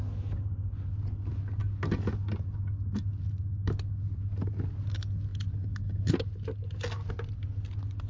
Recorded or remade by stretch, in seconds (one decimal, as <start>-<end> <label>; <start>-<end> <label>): 0.0-8.1 recorded